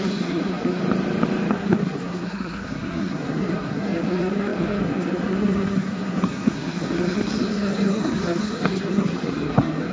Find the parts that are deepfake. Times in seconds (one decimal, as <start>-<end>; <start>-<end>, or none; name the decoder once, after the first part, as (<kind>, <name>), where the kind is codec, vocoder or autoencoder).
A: 0.0-0.8 (codec, SNAC); 1.5-9.9